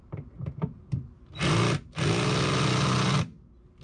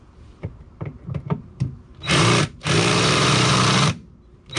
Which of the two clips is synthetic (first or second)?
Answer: second